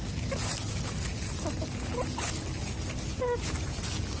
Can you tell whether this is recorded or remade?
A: recorded